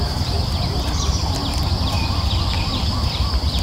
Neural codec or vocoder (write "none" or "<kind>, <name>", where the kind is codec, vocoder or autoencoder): none